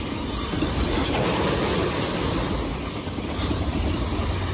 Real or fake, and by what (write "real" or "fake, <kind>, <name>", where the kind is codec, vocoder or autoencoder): fake, vocoder, BigVGAN v2